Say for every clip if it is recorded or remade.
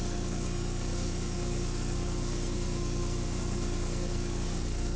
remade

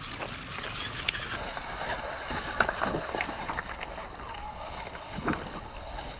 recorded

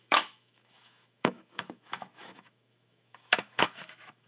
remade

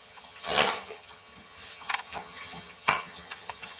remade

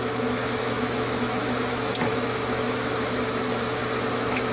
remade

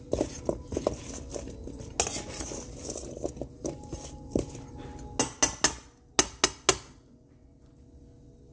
recorded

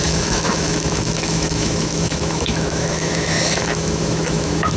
remade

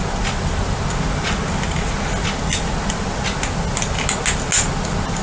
recorded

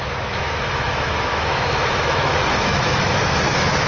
remade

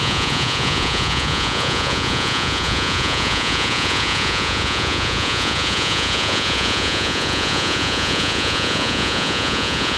remade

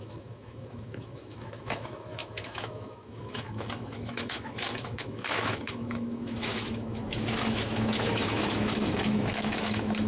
remade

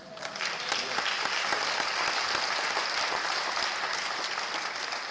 recorded